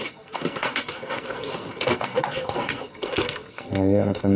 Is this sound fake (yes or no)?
yes